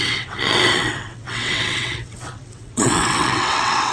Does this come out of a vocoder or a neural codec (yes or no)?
yes